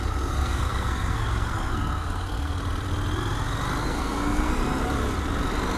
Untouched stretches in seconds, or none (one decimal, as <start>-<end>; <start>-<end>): 2.6-3.8; 4.6-5.8